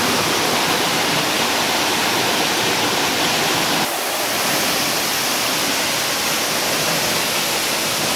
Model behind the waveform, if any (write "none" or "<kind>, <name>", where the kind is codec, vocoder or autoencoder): none